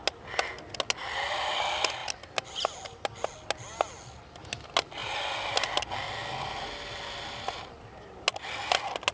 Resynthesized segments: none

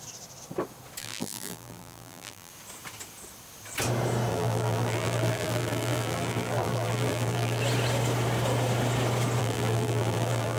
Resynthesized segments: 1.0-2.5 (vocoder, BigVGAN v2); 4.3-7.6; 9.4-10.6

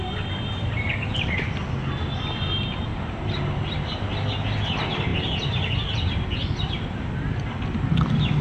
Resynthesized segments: 2.9-4.1 (vocoder, BigVGAN v2); 5.1-5.7

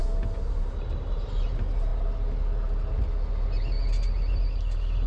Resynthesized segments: none

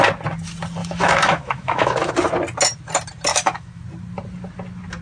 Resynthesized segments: 0.8-2.1 (autoencoder, DAC-VAE); 3.3-3.8

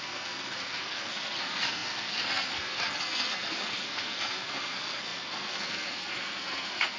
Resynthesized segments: 0.0-7.0 (codec, SNAC)

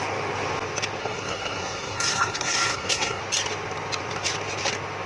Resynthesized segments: 1.0-3.2 (codec, SNAC)